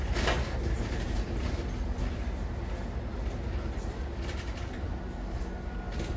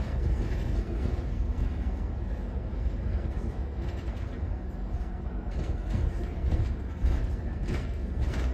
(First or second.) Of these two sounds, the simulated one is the second